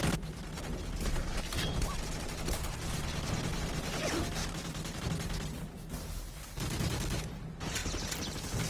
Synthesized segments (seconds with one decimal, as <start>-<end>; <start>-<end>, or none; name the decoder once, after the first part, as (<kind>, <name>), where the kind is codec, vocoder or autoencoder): 4.4-5.0 (autoencoder, DAC-VAE)